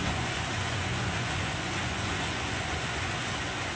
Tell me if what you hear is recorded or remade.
remade